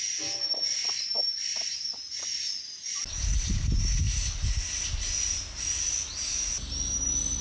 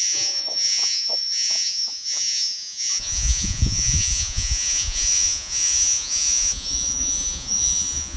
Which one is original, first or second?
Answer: first